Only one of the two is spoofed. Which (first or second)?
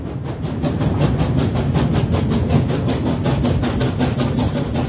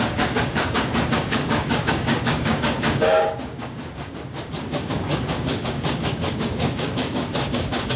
second